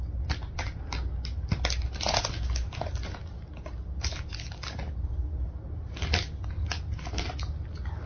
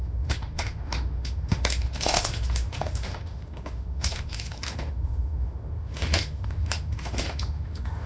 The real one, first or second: first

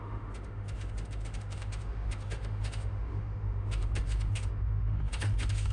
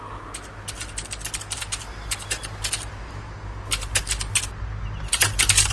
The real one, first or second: second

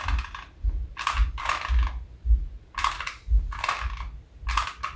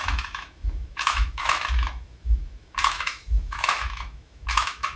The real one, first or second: first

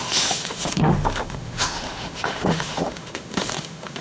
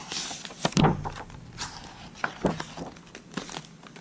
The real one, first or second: second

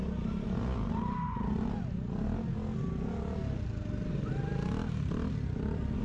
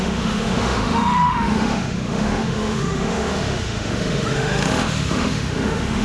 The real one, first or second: first